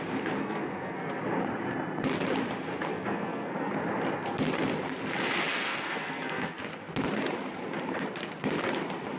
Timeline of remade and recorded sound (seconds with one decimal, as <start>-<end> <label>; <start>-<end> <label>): 0.0-0.4 recorded; 0.4-1.2 remade; 1.2-2.9 recorded; 2.9-3.7 remade; 3.7-5.5 recorded; 5.5-6.6 remade; 6.6-9.2 recorded